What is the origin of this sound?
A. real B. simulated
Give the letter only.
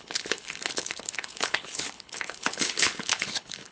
B